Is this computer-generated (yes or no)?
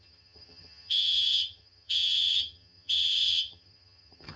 yes